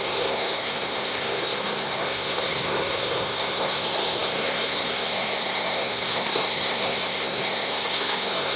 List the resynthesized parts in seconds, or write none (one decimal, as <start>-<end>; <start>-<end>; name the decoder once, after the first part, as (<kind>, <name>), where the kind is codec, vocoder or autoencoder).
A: 0.0-8.6 (codec, SNAC)